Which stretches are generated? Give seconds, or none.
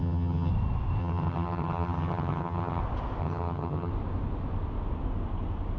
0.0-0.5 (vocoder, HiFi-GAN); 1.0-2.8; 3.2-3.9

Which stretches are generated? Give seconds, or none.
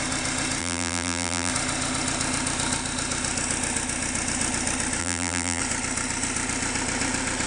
0.6-1.5 (vocoder, BigVGAN v2); 5.0-5.6